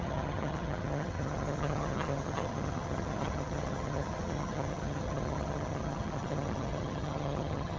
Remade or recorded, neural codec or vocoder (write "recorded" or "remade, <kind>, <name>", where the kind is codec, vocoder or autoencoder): remade, vocoder, HiFi-GAN